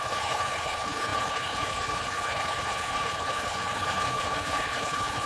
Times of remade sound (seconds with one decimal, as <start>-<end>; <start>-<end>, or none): 0.0-5.3